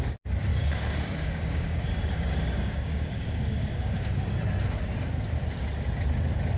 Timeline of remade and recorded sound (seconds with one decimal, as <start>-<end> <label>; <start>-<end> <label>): 0.0-0.5 recorded; 0.5-4.4 remade; 4.4-6.6 recorded